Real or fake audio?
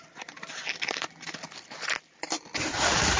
real